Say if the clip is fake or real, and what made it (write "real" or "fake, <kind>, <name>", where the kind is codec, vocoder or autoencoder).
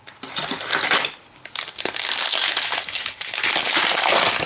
real